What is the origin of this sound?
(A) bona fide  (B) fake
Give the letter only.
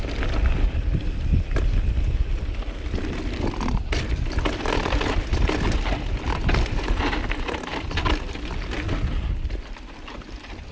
A